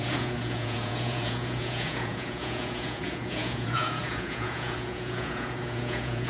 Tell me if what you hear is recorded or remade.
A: remade